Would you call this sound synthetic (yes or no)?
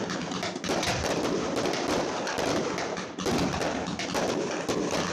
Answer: no